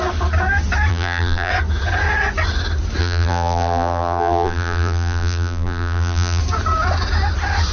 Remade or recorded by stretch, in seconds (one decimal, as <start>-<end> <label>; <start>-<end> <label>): 0.0-0.9 recorded; 0.9-1.5 remade; 1.5-3.0 recorded; 3.0-6.4 remade; 6.4-7.7 recorded